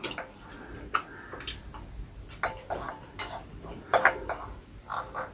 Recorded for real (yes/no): yes